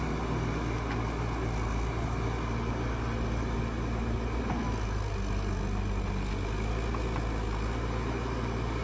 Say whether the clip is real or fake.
real